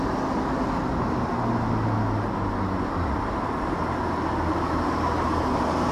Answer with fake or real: real